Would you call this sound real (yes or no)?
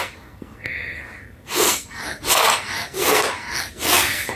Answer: no